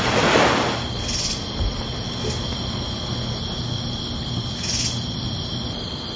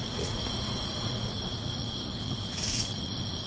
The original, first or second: first